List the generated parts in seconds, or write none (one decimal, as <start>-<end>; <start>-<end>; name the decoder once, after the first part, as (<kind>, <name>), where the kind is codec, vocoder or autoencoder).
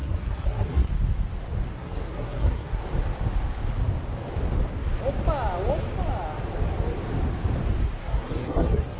0.0-0.9 (codec, SNAC); 1.7-2.8; 8.0-9.0